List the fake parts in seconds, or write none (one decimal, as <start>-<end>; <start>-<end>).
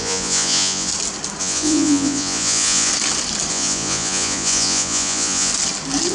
0.0-0.9; 1.4-2.9; 3.5-5.5